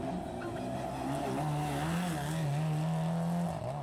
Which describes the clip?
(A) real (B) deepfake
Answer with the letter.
A